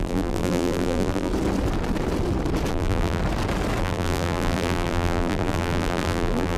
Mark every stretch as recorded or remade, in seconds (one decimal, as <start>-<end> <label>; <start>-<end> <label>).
0.0-1.3 remade; 1.3-2.7 recorded; 2.7-3.2 remade; 3.2-3.8 recorded; 3.8-6.6 remade